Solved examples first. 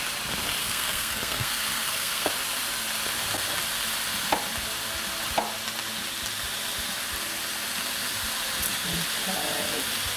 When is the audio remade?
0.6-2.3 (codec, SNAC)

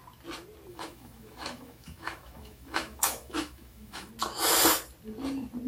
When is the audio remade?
0.7-4.1 (autoencoder, DAC-VAE)